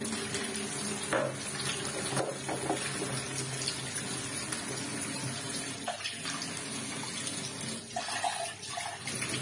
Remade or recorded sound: recorded